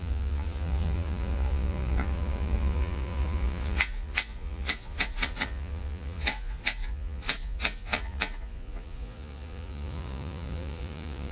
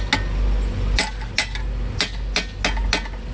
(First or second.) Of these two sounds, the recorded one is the second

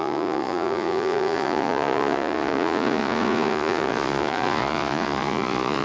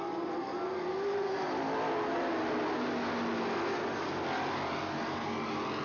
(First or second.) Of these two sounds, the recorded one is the second